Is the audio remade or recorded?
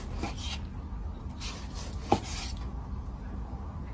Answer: recorded